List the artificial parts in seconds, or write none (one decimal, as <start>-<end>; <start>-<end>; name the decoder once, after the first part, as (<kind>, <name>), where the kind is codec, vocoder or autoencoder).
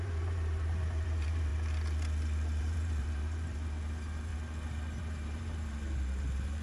0.0-1.5 (vocoder, BigVGAN v2); 2.6-4.3; 5.0-6.6